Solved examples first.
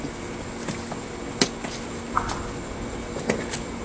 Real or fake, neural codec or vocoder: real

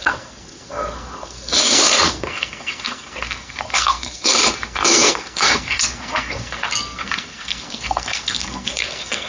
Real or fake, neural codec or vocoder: fake, codec, SNAC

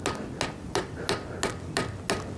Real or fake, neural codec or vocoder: real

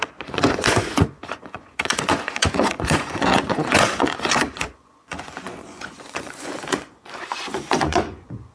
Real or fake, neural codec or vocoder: fake, vocoder, Vocos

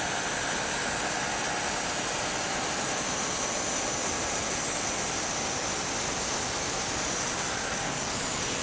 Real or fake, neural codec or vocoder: real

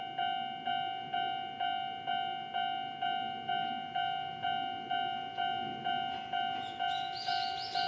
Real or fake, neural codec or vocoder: real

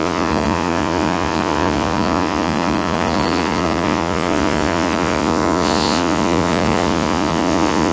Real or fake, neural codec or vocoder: fake, vocoder, Vocos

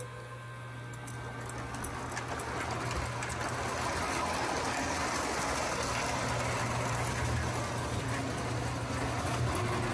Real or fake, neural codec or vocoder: real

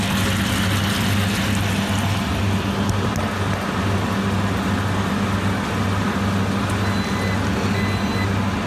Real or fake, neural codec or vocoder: real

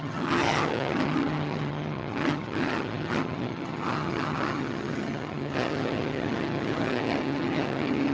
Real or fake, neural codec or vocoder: fake, vocoder, HiFi-GAN